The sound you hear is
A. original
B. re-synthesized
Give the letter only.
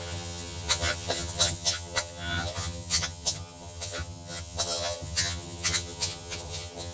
B